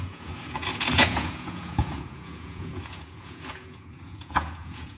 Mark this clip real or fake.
fake